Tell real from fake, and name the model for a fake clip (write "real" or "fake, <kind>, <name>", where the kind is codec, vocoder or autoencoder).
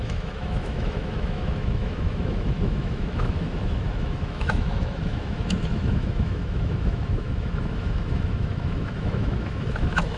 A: fake, autoencoder, DAC-VAE